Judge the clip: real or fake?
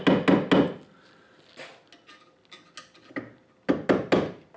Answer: real